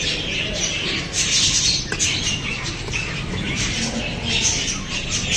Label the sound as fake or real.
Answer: real